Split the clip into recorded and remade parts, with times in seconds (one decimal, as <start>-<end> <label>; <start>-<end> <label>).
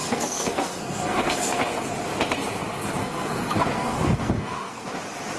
0.0-1.6 remade; 1.6-3.0 recorded; 3.0-4.9 remade; 4.9-5.4 recorded